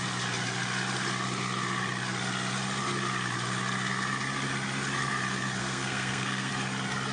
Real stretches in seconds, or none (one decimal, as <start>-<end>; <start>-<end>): 0.0-5.6; 6.5-7.1